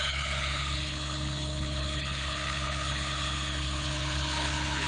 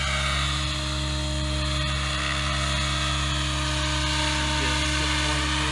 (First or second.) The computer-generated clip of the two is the first